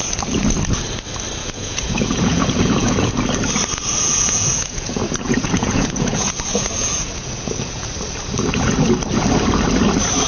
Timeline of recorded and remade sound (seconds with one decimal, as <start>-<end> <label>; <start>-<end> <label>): 0.0-1.4 recorded; 1.4-3.1 remade; 3.1-3.9 recorded; 3.9-7.9 remade; 7.9-10.3 recorded